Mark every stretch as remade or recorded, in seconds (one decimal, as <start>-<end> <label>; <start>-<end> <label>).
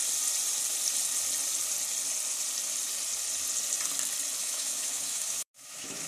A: 0.0-4.4 recorded; 4.4-6.1 remade